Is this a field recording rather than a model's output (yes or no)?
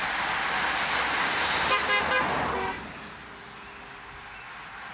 yes